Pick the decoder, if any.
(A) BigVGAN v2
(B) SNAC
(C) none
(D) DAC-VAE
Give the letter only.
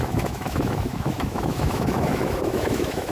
D